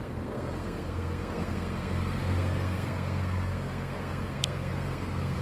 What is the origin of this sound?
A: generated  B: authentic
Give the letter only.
A